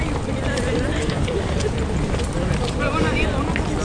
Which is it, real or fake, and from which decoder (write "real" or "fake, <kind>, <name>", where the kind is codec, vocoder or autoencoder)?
fake, vocoder, BigVGAN v2